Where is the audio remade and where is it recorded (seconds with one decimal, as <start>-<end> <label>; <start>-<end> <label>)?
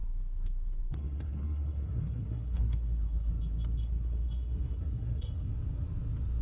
0.0-3.3 remade; 3.3-3.8 recorded; 3.8-5.5 remade; 5.5-6.4 recorded